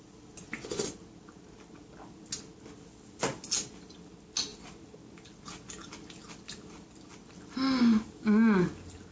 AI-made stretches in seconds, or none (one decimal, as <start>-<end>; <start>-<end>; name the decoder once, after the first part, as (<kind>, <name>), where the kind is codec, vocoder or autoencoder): none